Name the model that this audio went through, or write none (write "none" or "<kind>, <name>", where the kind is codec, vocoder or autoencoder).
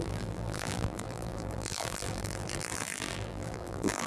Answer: vocoder, BigVGAN v2